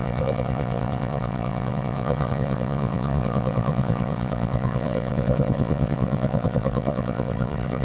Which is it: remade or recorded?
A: remade